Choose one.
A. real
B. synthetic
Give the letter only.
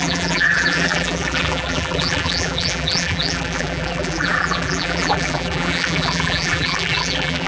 B